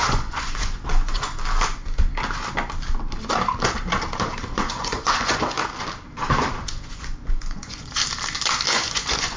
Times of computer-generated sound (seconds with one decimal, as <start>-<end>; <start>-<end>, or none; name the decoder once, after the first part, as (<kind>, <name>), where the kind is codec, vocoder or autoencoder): 0.0-1.3 (vocoder, Vocos); 4.4-5.6; 6.5-8.0; 8.7-9.4